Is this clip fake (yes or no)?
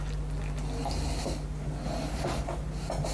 no